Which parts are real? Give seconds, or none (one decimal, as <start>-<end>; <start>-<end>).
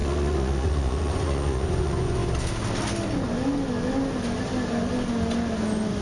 2.2-6.0